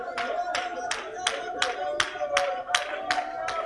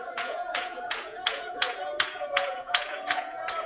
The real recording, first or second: first